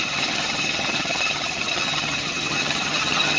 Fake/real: fake